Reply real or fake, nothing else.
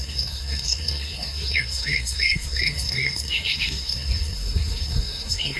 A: fake